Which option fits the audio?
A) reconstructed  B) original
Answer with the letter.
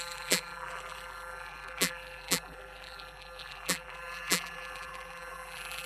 A